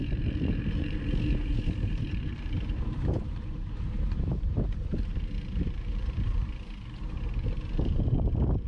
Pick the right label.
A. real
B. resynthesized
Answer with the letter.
B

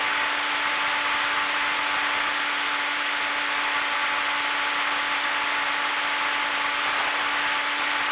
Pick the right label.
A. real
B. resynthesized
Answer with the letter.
A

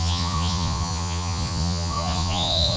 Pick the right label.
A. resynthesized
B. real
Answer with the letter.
A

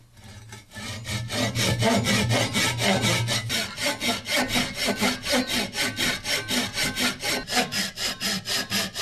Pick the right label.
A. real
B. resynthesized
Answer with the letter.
A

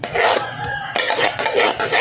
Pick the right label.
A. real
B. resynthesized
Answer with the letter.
A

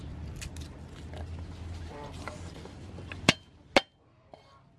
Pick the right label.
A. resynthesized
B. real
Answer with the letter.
B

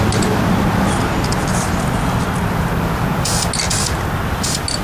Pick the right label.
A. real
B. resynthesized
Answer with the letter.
A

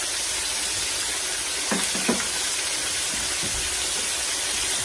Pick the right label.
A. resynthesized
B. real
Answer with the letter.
B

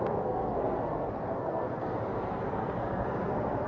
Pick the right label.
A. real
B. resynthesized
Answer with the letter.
B